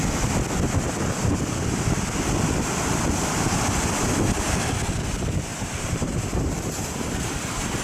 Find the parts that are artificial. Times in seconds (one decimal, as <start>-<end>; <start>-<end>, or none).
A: 5.5-7.8